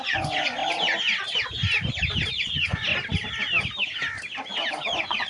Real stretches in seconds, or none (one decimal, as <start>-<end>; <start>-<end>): 0.6-2.3; 2.9-4.7